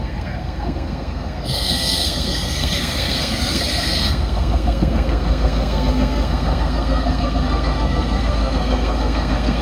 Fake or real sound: fake